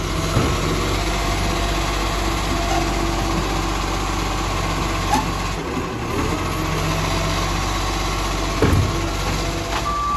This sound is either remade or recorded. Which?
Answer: recorded